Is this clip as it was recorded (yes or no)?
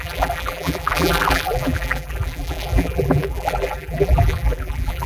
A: no